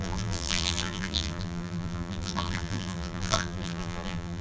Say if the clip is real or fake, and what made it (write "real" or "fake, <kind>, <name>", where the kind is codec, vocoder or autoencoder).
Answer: fake, vocoder, BigVGAN v2